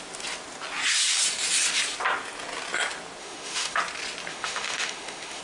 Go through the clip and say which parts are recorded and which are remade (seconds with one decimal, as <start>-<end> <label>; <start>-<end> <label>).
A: 0.0-3.2 recorded; 3.2-3.8 remade; 3.8-4.3 recorded; 4.3-5.4 remade